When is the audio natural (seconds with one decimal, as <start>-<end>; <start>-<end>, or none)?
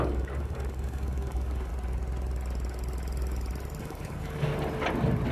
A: 1.7-3.8; 4.5-5.3